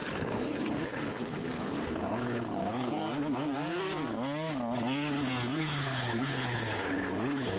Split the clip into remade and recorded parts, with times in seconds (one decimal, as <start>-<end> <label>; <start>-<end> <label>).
0.0-3.0 remade; 3.0-5.6 recorded; 5.6-7.6 remade